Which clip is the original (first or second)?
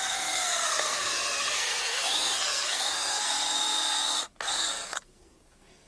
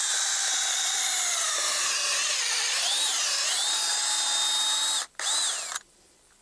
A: second